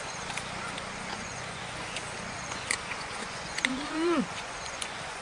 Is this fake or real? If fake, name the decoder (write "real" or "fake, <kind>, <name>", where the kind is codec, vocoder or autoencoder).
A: fake, vocoder, Vocos